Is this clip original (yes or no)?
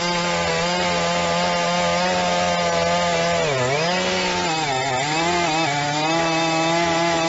yes